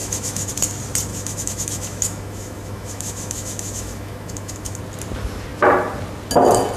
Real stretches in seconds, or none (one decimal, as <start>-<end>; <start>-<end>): 0.5-1.1; 4.8-6.8